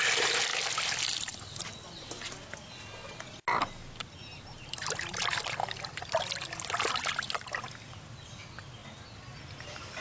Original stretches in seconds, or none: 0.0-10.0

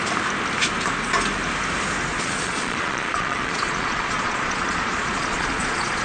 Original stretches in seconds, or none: 0.0-2.1

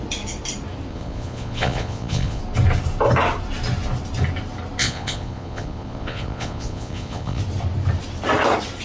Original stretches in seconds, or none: 0.0-0.9; 2.4-4.8; 7.4-8.8

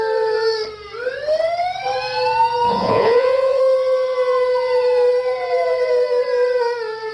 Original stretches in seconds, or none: 0.0-2.7; 3.6-7.1

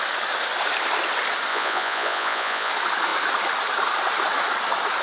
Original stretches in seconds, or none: 0.0-1.5; 2.7-5.0

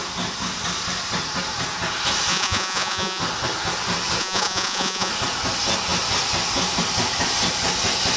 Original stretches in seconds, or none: 0.0-2.3; 3.2-4.2; 5.1-8.2

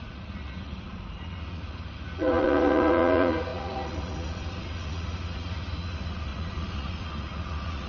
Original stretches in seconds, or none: none